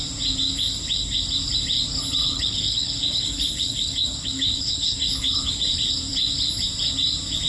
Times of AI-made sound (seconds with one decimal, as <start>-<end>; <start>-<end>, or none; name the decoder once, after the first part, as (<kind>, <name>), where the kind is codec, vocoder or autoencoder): 2.2-5.5 (codec, HILCodec)